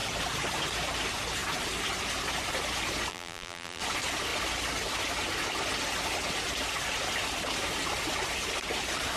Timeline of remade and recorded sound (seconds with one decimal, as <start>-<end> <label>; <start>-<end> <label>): 0.0-3.1 recorded; 3.1-3.8 remade; 3.8-9.2 recorded